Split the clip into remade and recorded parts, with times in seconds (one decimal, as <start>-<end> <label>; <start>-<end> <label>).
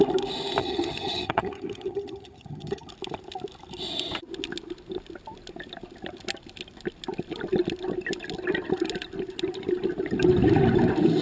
0.0-0.6 recorded; 0.6-2.9 remade; 2.9-11.2 recorded